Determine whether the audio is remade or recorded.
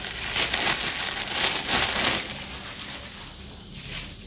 recorded